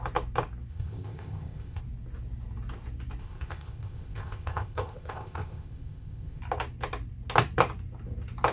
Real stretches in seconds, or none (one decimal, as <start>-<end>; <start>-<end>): 0.0-0.7; 1.8-3.2; 6.4-8.5